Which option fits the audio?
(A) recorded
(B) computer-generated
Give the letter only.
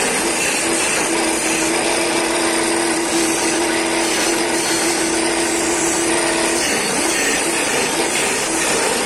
A